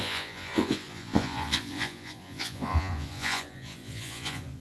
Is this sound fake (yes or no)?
yes